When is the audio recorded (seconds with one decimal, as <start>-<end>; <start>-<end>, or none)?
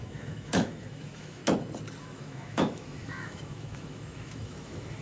1.4-2.0